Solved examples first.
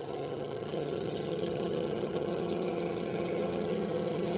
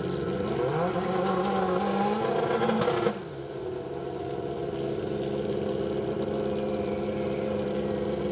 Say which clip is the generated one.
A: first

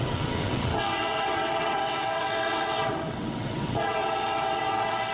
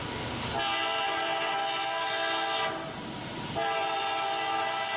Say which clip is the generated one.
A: first